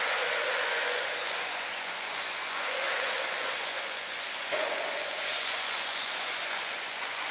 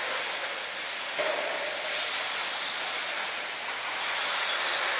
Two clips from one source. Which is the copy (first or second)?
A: first